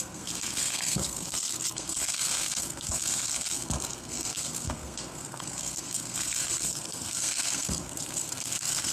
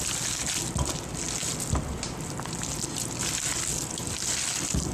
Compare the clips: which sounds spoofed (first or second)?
first